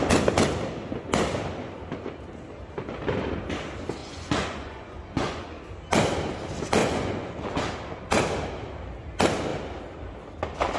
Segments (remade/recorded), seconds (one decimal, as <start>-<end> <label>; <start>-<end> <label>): 0.0-4.0 recorded; 4.0-5.6 remade; 5.6-6.8 recorded; 6.8-7.5 remade; 7.5-10.8 recorded